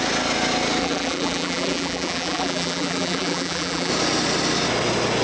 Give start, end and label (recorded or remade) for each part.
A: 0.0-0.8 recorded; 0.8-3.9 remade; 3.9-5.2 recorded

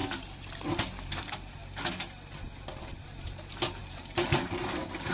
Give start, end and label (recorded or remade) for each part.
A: 0.0-1.1 recorded; 1.1-1.6 remade; 1.6-2.7 recorded; 2.7-5.1 remade

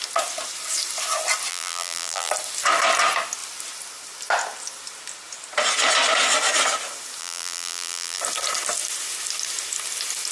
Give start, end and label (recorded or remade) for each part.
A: 0.0-1.5 recorded; 1.5-2.3 remade; 2.3-7.2 recorded; 7.2-8.2 remade; 8.2-10.3 recorded

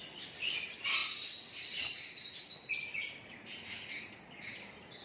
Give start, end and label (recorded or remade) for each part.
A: 0.0-5.0 recorded

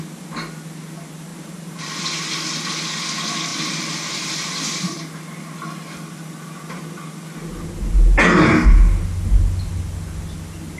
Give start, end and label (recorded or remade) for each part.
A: 0.0-1.3 recorded; 1.3-2.0 remade; 2.0-3.5 recorded; 3.5-4.3 remade; 4.3-10.8 recorded

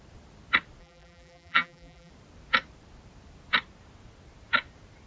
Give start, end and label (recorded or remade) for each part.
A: 0.0-0.8 recorded; 0.8-2.1 remade; 2.1-5.1 recorded

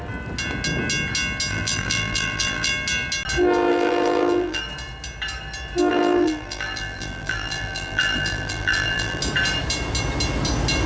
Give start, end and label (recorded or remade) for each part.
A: 0.0-1.5 recorded; 1.5-2.7 remade; 2.7-3.7 recorded; 3.7-4.6 remade; 4.6-5.9 recorded; 5.9-9.2 remade; 9.2-10.9 recorded

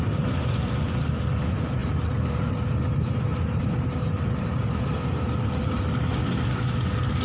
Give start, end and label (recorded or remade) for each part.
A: 0.0-1.8 recorded; 1.8-5.8 remade; 5.8-7.2 recorded